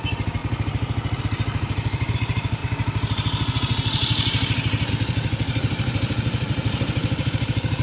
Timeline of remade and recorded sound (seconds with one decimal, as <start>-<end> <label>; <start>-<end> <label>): 0.0-0.4 remade; 0.4-1.2 recorded; 1.2-2.6 remade; 2.6-4.9 recorded; 4.9-7.8 remade